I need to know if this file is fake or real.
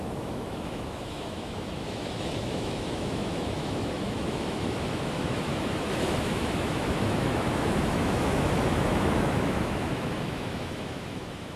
fake